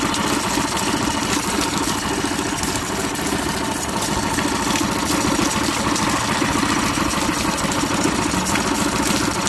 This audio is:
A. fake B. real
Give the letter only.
B